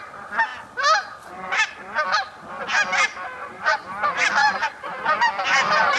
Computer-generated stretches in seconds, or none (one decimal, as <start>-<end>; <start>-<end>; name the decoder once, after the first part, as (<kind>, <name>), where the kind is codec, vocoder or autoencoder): 3.4-3.9 (vocoder, Vocos); 4.4-5.3